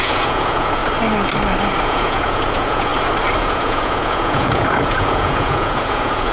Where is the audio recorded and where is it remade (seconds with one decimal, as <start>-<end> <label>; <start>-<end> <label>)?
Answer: 0.0-0.8 remade; 0.8-1.8 recorded; 1.8-2.9 remade; 2.9-3.4 recorded; 3.4-6.3 remade